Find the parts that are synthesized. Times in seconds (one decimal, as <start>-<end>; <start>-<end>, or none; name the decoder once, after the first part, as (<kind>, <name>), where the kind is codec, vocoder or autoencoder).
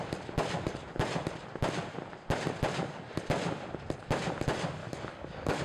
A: 4.8-5.6 (codec, DAC)